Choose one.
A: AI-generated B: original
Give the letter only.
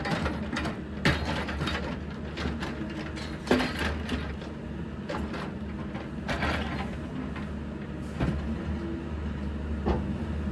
B